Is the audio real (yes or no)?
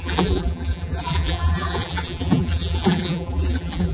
no